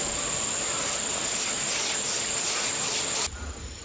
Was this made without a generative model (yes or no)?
yes